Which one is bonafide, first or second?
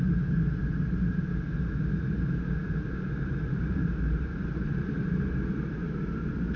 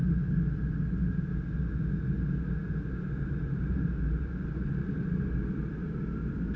second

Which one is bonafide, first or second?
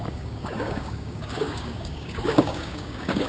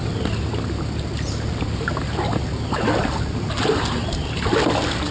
second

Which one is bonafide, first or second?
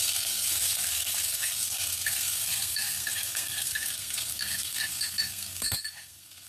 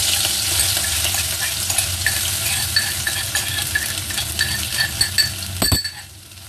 second